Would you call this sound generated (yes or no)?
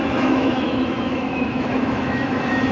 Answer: yes